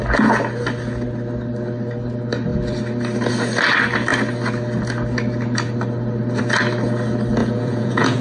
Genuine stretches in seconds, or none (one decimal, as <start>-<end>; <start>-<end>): 0.0-7.4